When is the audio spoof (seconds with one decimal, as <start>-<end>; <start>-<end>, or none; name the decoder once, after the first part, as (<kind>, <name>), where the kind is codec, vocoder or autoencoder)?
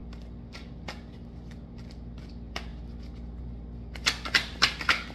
none